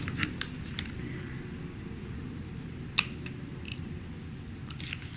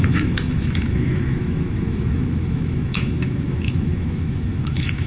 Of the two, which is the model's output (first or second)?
second